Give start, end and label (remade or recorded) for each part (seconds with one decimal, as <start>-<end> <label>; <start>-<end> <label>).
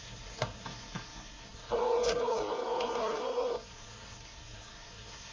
0.0-5.3 remade